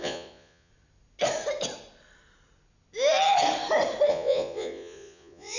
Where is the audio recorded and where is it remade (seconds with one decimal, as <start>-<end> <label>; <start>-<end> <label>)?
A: 0.0-0.7 remade; 0.7-4.1 recorded; 4.1-5.6 remade